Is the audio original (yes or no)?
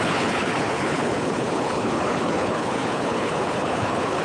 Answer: no